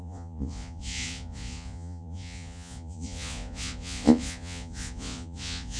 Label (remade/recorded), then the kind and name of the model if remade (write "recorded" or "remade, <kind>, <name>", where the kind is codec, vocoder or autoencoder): remade, vocoder, Vocos